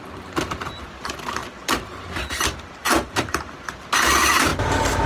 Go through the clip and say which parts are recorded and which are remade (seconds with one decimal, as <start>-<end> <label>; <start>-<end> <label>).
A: 0.0-1.4 recorded; 1.4-2.4 remade; 2.4-2.8 recorded; 2.8-3.5 remade; 3.5-5.1 recorded